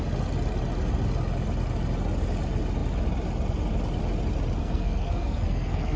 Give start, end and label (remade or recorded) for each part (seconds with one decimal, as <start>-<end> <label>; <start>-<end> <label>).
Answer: 0.0-4.6 recorded; 4.6-6.0 remade